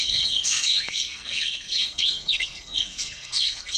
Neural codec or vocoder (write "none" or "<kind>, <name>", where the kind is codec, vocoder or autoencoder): codec, SNAC